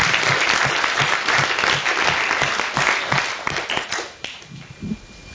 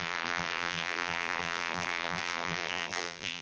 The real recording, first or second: first